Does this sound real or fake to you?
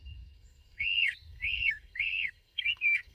fake